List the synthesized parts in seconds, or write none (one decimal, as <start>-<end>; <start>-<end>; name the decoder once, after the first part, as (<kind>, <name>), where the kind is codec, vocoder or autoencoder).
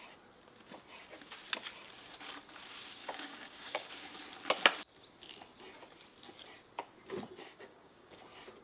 3.0-3.9 (codec, DAC); 7.4-8.2